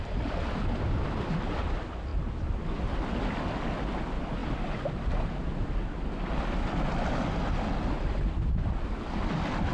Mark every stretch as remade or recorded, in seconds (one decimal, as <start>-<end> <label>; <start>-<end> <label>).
0.0-9.7 recorded